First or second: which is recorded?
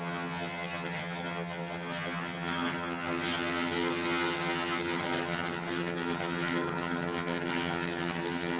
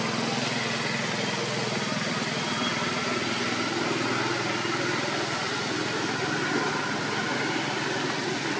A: second